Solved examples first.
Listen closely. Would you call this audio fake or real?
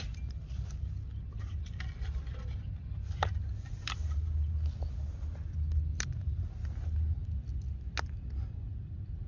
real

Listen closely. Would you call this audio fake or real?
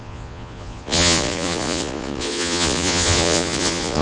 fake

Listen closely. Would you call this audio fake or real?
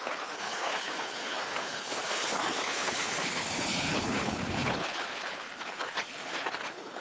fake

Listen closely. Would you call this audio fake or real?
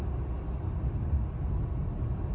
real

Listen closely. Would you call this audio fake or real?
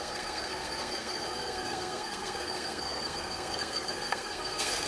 fake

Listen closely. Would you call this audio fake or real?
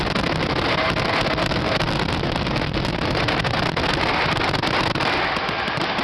real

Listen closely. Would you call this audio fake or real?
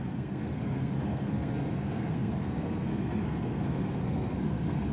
fake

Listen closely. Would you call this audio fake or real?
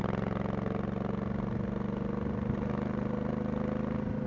real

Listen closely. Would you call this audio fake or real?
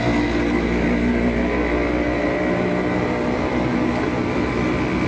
real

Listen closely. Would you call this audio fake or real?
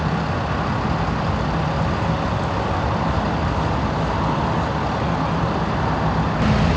real